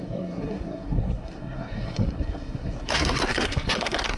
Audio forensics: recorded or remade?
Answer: remade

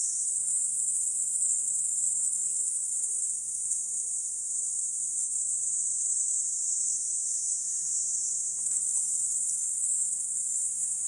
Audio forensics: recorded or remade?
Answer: remade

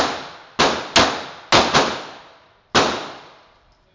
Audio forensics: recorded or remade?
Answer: recorded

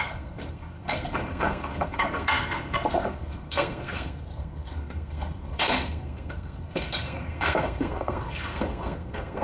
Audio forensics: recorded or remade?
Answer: remade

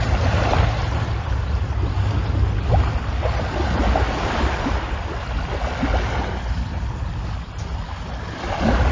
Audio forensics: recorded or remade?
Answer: recorded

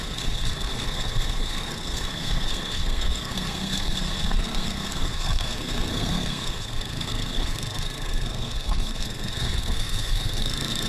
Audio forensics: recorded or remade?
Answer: remade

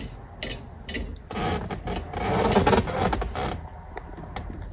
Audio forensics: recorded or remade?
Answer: recorded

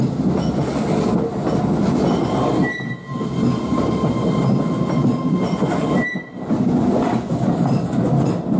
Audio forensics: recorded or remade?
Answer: recorded